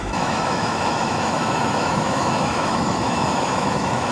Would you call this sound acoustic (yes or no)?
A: no